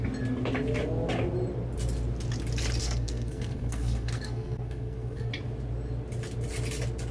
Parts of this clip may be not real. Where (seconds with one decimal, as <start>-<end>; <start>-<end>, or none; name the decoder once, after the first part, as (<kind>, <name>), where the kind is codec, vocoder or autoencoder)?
2.8-5.3 (codec, SNAC)